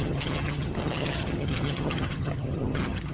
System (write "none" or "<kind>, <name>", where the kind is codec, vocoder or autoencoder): vocoder, HiFi-GAN